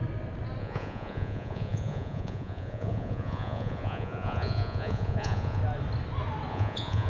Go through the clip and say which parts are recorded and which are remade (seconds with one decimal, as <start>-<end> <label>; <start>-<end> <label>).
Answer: 0.0-0.6 recorded; 0.6-5.6 remade; 5.6-6.5 recorded; 6.5-7.1 remade